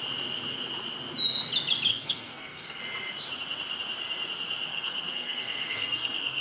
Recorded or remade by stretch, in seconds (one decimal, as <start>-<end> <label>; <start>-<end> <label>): 0.0-1.9 recorded; 1.9-2.8 remade; 2.8-4.7 recorded; 4.7-6.4 remade